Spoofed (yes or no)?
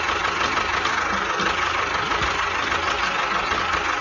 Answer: no